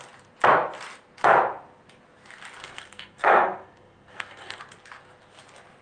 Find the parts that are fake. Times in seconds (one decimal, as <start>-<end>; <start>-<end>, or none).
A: 2.6-4.6